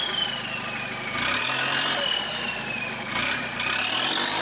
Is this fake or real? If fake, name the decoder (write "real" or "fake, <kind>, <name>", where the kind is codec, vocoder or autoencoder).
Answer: real